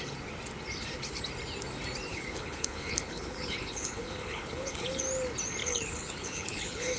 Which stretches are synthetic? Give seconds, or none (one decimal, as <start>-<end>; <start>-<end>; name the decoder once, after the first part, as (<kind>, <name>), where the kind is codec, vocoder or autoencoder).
2.1-5.0 (codec, HILCodec); 5.6-7.0